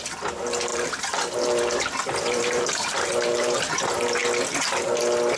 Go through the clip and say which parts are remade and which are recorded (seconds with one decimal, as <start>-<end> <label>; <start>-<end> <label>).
0.0-0.7 recorded; 0.7-3.7 remade; 3.7-5.4 recorded